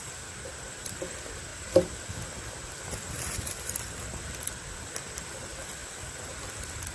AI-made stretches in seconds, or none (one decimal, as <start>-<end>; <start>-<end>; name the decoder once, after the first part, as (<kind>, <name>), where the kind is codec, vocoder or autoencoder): 0.0-1.5 (vocoder, BigVGAN v2); 3.1-6.9